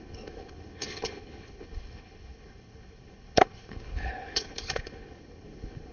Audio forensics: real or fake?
fake